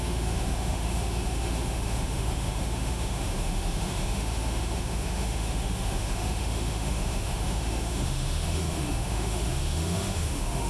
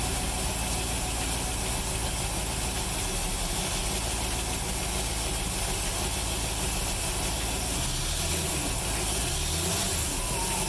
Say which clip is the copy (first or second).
first